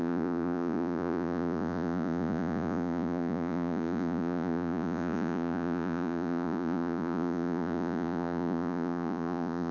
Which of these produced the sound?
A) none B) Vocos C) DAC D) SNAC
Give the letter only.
B